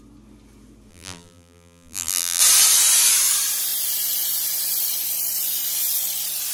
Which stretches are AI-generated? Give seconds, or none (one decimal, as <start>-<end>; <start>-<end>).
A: 0.9-2.4